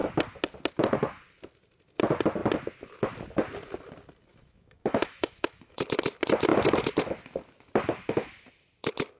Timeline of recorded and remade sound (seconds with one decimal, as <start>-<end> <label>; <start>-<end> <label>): 0.0-4.3 recorded; 4.3-5.8 remade; 5.8-9.2 recorded